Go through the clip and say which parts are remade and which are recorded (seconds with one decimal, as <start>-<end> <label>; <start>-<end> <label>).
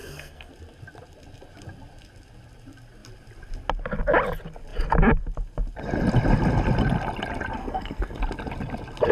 0.0-0.5 remade; 0.5-7.6 recorded; 7.6-8.2 remade; 8.2-9.1 recorded